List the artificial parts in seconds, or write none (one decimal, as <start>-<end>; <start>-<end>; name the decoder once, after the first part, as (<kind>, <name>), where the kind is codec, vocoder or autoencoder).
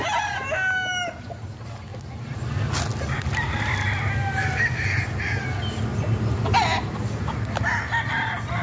none